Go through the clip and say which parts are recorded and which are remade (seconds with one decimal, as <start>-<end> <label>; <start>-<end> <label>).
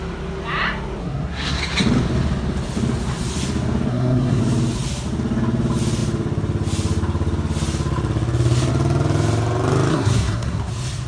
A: 0.0-1.0 recorded; 1.0-1.6 remade; 1.6-3.9 recorded; 3.9-4.4 remade; 4.4-9.9 recorded; 9.9-10.7 remade; 10.7-11.1 recorded